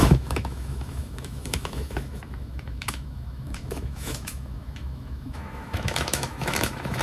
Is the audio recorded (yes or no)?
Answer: no